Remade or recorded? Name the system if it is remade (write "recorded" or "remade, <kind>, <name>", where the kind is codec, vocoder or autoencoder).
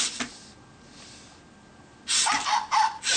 recorded